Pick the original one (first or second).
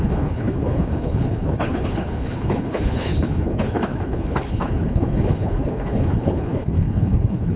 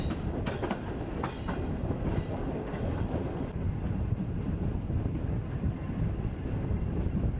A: second